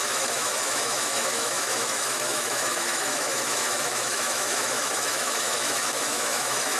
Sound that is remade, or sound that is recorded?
remade